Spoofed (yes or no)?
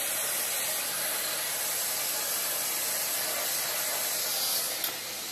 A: no